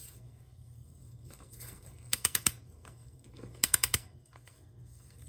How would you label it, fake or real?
fake